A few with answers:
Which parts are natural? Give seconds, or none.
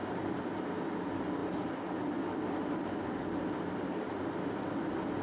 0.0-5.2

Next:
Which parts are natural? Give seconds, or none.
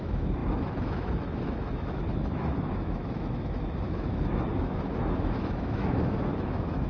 none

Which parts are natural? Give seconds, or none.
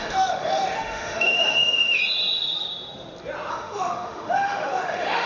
2.0-3.5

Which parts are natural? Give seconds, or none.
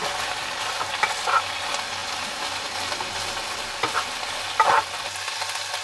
0.0-5.8